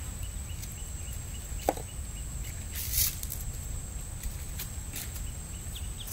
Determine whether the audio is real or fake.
real